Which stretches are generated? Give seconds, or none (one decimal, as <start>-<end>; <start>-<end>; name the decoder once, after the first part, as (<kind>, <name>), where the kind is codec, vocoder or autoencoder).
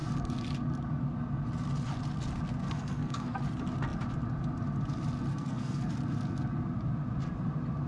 2.6-3.4 (codec, SNAC); 5.3-5.9